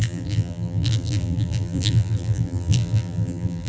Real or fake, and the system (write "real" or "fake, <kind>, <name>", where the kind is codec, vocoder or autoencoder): fake, vocoder, BigVGAN v2